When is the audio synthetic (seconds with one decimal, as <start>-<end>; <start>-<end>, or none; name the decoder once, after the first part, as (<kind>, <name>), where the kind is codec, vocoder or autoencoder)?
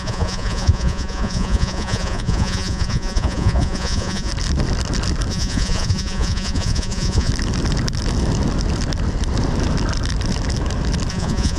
0.0-4.3 (vocoder, Vocos); 5.3-7.3; 11.1-11.6